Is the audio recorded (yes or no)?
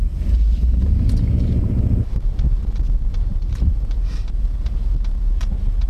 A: no